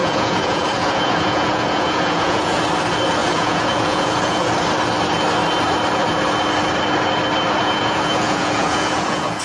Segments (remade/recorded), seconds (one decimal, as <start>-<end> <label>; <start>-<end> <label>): 0.0-2.6 remade; 2.6-3.2 recorded; 3.2-4.5 remade; 4.5-7.6 recorded; 7.6-9.4 remade